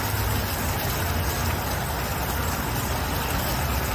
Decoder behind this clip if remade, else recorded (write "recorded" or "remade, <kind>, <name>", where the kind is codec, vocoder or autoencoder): recorded